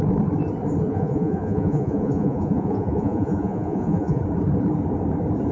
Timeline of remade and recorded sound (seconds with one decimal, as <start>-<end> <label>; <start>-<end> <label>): 0.0-0.9 recorded; 0.9-4.2 remade; 4.2-5.5 recorded